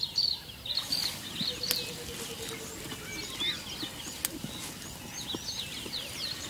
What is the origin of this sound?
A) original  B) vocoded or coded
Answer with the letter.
A